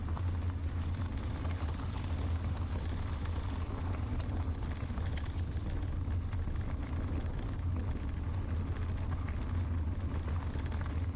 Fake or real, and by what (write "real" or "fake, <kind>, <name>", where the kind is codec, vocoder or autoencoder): real